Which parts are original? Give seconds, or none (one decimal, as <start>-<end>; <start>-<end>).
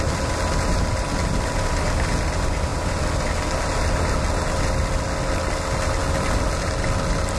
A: 0.0-7.4